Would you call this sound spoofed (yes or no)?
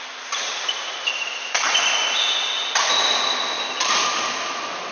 no